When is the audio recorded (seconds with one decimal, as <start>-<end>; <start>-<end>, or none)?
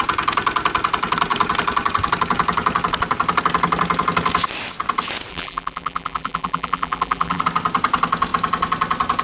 0.0-5.3; 7.4-9.2